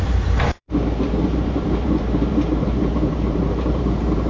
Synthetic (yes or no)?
yes